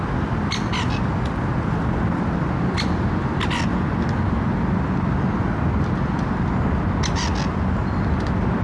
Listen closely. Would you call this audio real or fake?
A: real